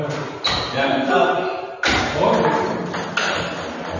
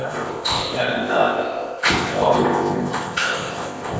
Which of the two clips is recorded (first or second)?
first